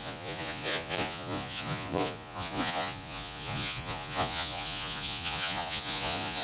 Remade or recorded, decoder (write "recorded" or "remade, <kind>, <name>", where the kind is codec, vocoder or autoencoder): remade, vocoder, Vocos